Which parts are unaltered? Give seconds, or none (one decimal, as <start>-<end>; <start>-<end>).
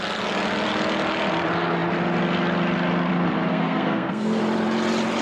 0.0-3.5; 4.4-5.2